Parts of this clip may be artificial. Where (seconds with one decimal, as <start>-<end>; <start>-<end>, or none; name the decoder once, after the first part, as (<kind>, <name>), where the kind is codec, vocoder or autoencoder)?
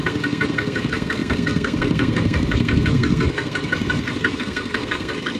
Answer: 0.0-5.4 (codec, SNAC)